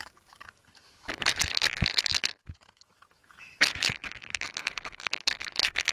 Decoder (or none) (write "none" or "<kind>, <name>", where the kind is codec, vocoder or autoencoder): autoencoder, DAC-VAE